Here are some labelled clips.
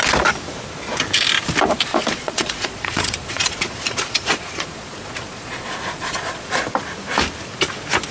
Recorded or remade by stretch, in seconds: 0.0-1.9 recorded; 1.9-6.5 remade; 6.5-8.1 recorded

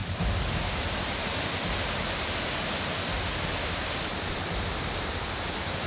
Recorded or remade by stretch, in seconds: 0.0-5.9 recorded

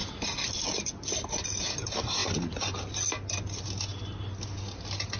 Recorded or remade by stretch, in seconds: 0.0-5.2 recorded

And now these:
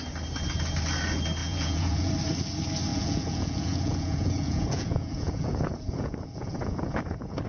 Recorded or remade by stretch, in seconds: 0.0-1.4 recorded; 1.4-2.1 remade; 2.1-2.9 recorded; 2.9-7.5 remade